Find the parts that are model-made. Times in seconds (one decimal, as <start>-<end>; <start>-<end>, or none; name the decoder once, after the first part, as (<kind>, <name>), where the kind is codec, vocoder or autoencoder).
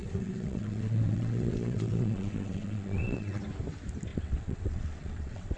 0.0-3.4 (vocoder, WaveNeXt); 4.1-5.6